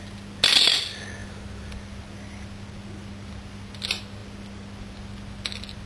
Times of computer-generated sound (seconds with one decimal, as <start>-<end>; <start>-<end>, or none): none